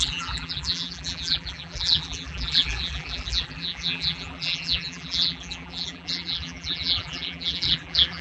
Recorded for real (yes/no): no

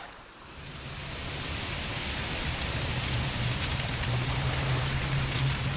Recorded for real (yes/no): no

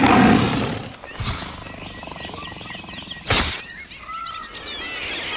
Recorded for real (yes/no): yes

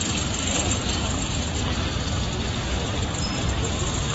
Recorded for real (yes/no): yes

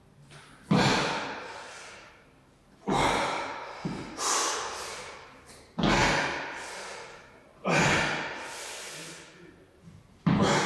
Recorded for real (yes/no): yes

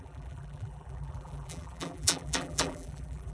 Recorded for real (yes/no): no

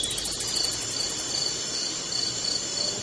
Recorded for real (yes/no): yes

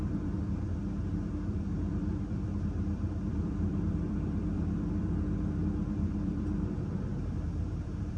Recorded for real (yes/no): no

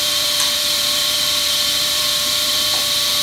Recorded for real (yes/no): no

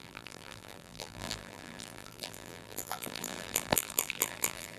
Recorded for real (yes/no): no